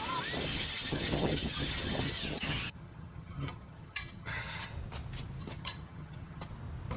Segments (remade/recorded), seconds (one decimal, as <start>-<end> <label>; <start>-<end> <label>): 0.0-0.5 recorded; 0.5-4.7 remade; 4.7-5.4 recorded; 5.4-6.5 remade; 6.5-7.0 recorded